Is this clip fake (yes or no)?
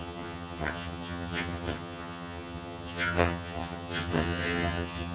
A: yes